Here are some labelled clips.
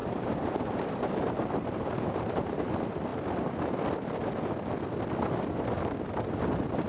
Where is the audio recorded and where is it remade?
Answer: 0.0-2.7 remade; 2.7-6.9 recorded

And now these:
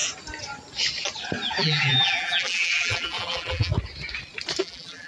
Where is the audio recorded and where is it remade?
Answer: 0.0-1.6 recorded; 1.6-3.7 remade; 3.7-4.6 recorded; 4.6-5.1 remade

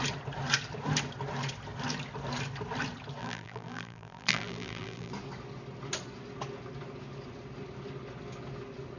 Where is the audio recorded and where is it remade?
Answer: 0.0-3.2 recorded; 3.2-5.1 remade; 5.1-9.0 recorded

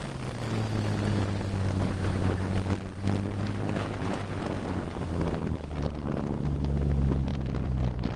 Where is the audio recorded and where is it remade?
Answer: 0.0-7.3 recorded; 7.3-8.2 remade

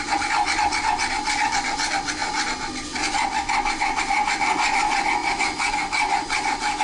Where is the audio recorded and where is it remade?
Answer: 0.0-6.8 recorded